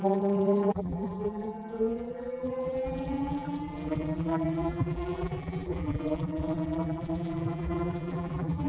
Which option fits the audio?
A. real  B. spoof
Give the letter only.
B